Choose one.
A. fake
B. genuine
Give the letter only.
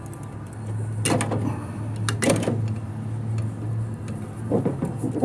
B